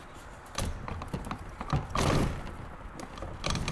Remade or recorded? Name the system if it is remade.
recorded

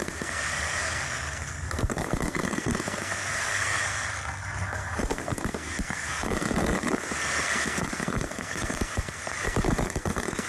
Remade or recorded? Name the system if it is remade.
remade, codec, SNAC